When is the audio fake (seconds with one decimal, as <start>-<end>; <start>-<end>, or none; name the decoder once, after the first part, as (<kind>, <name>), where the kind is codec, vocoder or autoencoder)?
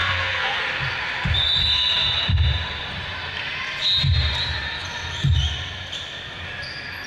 0.0-0.6 (codec, SNAC)